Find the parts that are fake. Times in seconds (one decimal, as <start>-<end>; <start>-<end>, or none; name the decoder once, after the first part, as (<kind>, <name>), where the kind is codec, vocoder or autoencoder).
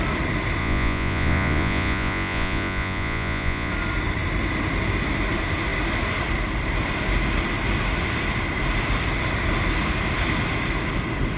0.6-3.7 (vocoder, Vocos)